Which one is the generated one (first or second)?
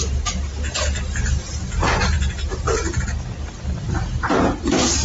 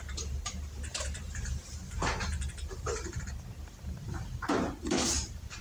second